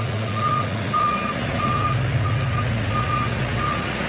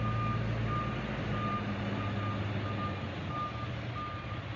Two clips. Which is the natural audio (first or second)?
second